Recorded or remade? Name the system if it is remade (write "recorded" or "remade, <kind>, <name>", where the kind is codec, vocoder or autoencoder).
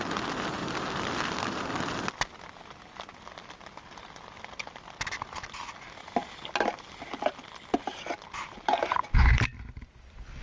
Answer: recorded